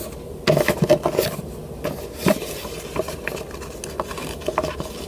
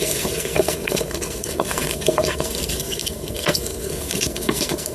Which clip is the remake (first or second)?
second